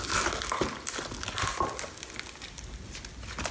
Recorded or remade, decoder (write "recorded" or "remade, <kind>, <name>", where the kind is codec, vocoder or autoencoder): recorded